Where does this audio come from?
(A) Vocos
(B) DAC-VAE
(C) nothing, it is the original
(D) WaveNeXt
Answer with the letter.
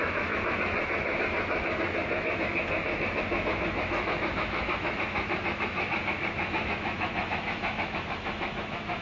B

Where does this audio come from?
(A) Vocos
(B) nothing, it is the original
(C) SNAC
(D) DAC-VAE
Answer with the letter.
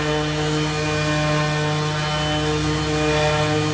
B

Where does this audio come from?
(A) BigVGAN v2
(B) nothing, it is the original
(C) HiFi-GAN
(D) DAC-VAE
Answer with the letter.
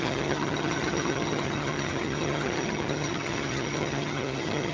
C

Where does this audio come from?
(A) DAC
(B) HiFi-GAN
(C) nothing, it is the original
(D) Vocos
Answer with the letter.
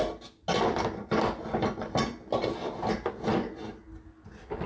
C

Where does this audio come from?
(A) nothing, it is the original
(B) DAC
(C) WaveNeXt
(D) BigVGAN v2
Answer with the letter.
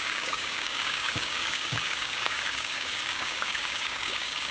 B